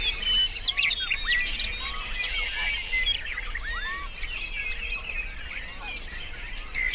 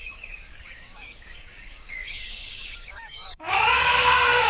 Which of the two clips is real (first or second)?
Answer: first